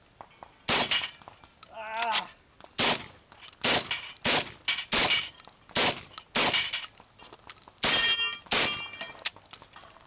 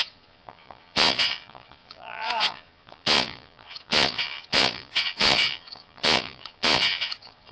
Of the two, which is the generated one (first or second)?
second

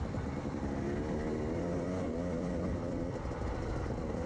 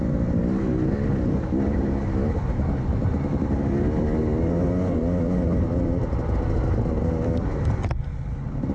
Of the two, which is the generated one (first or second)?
first